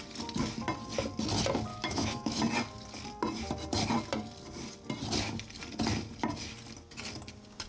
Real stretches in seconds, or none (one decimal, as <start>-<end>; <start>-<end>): 0.0-1.7; 2.4-7.7